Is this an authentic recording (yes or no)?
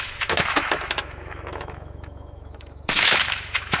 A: no